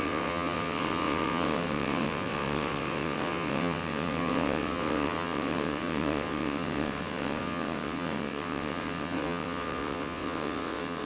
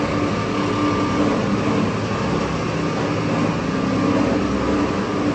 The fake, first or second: first